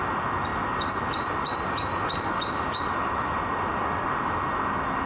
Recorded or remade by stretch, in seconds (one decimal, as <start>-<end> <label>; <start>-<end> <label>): 0.0-5.1 recorded